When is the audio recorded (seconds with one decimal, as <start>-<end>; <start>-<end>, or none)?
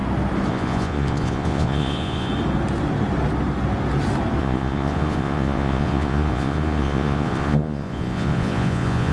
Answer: 0.0-0.5; 2.3-4.4